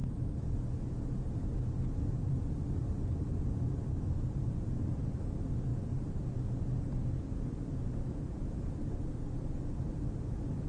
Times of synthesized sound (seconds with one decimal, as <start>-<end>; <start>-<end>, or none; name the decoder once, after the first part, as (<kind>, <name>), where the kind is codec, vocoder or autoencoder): 2.0-10.7 (vocoder, BigVGAN v2)